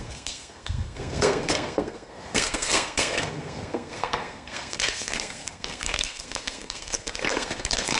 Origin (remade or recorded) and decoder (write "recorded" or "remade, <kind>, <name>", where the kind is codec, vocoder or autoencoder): remade, codec, SNAC